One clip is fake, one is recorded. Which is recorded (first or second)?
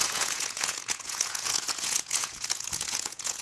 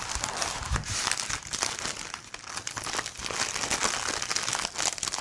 second